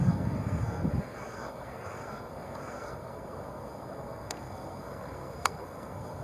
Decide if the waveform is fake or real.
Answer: fake